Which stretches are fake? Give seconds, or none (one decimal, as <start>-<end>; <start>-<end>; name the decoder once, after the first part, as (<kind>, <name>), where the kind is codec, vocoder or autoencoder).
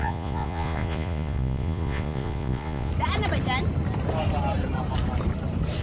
0.0-2.9 (vocoder, Vocos)